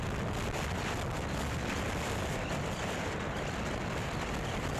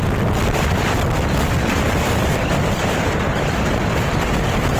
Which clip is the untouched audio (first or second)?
first